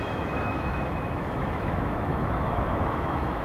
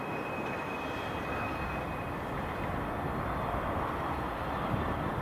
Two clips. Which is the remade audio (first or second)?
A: first